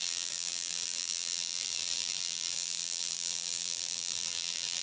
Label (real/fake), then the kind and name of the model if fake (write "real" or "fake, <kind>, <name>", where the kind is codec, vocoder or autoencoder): fake, vocoder, BigVGAN v2